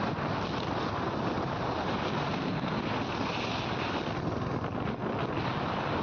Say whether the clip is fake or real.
real